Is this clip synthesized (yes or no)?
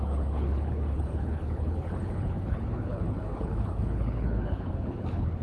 yes